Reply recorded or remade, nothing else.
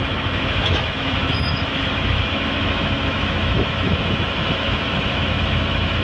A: remade